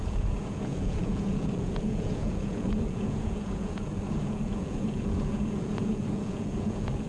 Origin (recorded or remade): remade